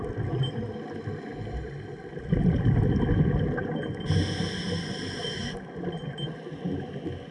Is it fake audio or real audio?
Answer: real